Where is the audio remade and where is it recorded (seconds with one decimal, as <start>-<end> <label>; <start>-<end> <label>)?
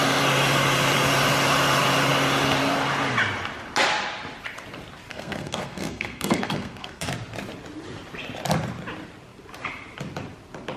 0.0-5.1 recorded; 5.1-7.1 remade; 7.1-10.8 recorded